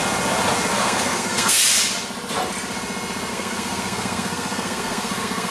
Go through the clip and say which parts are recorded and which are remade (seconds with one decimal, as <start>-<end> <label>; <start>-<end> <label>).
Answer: 0.0-0.7 recorded; 0.7-1.6 remade; 1.6-3.3 recorded; 3.3-5.5 remade